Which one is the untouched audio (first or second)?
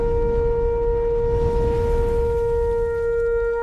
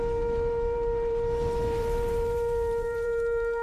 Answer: first